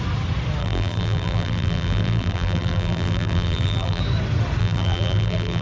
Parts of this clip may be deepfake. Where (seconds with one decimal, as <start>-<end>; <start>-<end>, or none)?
0.6-4.0; 4.6-5.6